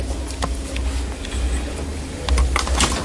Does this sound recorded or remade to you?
recorded